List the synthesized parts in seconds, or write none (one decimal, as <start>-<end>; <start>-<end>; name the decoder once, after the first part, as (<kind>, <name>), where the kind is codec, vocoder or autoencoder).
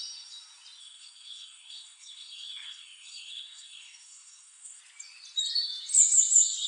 0.8-4.8 (codec, SNAC)